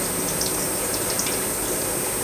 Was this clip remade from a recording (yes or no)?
no